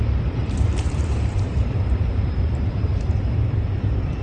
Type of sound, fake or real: fake